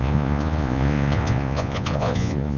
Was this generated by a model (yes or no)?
yes